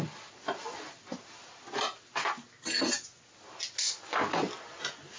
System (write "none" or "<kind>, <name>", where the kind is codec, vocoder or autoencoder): none